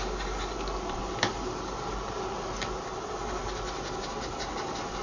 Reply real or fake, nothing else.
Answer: real